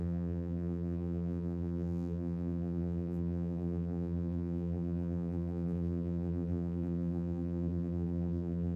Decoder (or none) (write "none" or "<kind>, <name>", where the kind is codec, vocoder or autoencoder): vocoder, BigVGAN v2